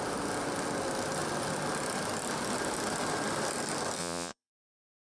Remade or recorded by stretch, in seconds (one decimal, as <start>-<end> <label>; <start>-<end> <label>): 0.0-4.0 recorded; 4.0-4.5 remade; 4.5-5.1 recorded